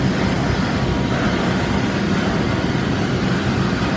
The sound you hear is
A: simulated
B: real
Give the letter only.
B